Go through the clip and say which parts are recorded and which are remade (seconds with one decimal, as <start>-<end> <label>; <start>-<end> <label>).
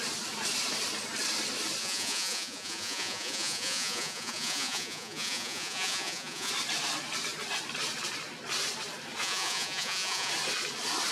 0.0-1.8 recorded; 1.8-6.5 remade; 6.5-9.2 recorded; 9.2-10.3 remade; 10.3-11.1 recorded